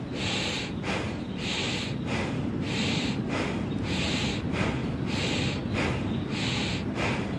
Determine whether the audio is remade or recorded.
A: recorded